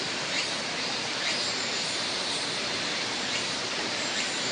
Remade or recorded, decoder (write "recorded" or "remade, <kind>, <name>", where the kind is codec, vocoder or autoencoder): remade, vocoder, BigVGAN v2